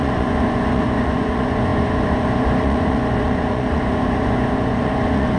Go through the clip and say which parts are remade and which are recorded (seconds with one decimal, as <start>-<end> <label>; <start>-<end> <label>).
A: 0.0-5.4 remade